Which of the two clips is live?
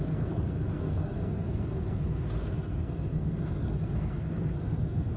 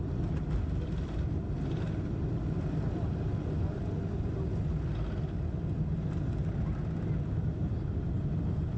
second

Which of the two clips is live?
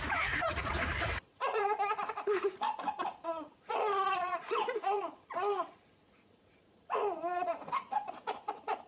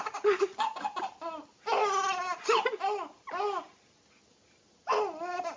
second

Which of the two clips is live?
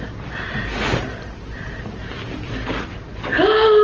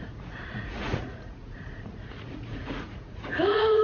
first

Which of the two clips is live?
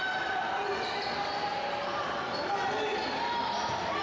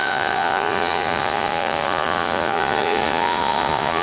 first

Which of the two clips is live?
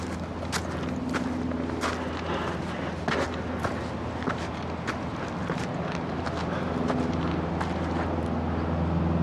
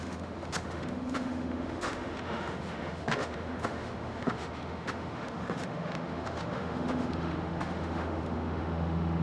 first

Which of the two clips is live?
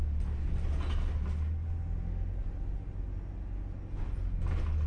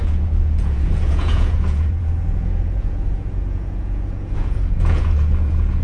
first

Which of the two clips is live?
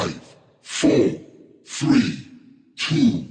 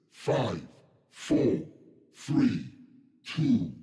second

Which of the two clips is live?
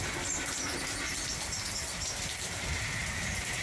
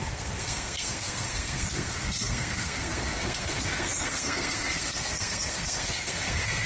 first